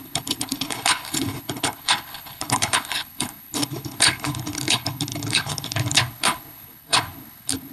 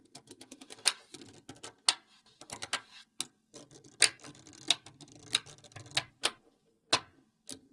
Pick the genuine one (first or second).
second